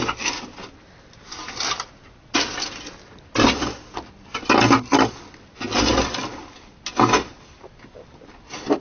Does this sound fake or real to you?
real